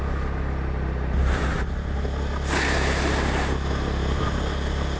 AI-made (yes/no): no